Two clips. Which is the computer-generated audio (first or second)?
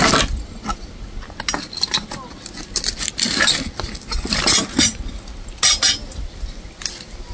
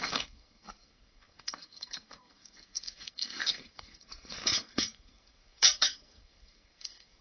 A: second